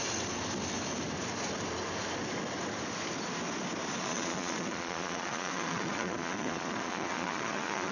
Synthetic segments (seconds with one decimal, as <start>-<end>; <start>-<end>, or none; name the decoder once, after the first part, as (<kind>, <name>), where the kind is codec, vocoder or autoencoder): 4.0-7.9 (vocoder, Vocos)